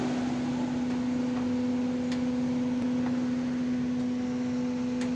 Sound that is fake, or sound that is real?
real